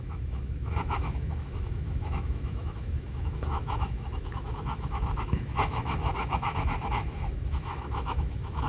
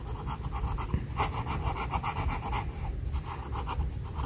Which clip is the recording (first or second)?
second